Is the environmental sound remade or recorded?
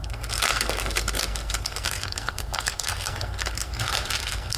remade